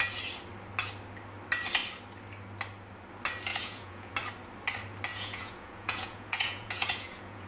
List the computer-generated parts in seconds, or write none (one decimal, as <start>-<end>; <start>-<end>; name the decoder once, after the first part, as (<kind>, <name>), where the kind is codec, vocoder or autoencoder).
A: 3.5-4.1 (vocoder, Vocos); 5.1-7.5